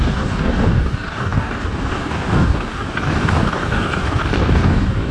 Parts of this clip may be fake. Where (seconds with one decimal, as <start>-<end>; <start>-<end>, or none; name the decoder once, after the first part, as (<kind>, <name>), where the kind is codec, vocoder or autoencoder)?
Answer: 0.0-5.1 (codec, DAC)